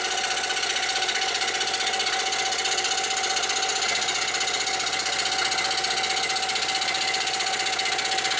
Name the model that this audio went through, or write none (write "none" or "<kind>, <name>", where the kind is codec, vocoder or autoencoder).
none